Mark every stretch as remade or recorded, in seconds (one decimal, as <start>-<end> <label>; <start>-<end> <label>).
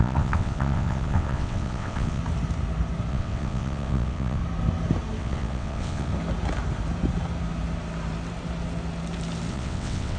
0.0-2.2 remade; 2.2-3.1 recorded; 3.1-4.4 remade; 4.4-5.2 recorded; 5.2-6.1 remade; 6.1-9.5 recorded; 9.5-10.2 remade